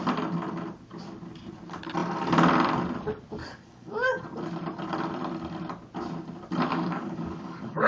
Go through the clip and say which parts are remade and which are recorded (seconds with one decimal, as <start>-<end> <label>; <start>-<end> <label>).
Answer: 0.0-3.4 recorded; 3.4-4.2 remade; 4.2-6.7 recorded; 6.7-7.9 remade